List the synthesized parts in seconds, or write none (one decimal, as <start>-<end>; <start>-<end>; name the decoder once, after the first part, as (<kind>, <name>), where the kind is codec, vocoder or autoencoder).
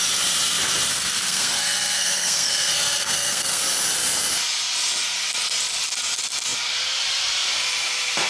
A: 0.9-3.6 (codec, SNAC)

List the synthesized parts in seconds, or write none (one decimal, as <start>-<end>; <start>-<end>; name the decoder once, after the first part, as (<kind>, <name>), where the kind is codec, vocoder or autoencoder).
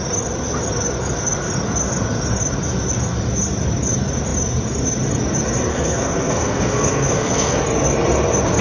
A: 5.7-7.6 (codec, SNAC)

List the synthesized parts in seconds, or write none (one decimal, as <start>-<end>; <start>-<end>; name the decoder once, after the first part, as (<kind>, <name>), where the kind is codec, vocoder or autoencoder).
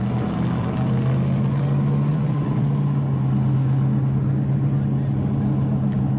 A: 2.1-2.7 (vocoder, Vocos)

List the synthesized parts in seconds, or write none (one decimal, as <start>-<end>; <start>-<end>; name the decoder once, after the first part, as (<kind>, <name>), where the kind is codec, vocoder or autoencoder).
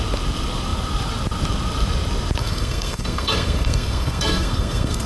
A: 2.4-5.1 (codec, SNAC)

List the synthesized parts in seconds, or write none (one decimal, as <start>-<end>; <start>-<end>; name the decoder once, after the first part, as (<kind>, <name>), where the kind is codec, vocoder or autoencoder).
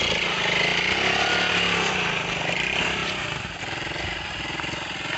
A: none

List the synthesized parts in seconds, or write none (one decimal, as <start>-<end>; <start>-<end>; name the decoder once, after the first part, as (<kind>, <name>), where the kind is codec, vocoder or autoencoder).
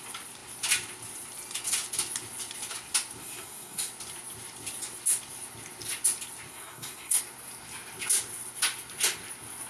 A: 3.2-3.9 (codec, SNAC); 6.5-7.2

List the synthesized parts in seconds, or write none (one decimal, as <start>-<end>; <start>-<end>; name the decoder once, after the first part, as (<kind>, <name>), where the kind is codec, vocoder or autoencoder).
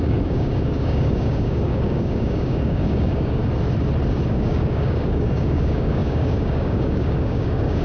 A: 0.0-3.4 (codec, DAC); 4.3-7.8